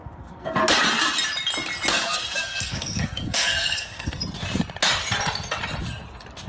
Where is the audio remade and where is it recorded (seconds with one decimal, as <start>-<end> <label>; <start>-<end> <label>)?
0.0-0.6 remade; 0.6-1.9 recorded; 1.9-4.2 remade; 4.2-6.5 recorded